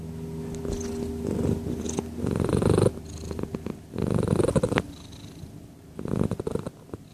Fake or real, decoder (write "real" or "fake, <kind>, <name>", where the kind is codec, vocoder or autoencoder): real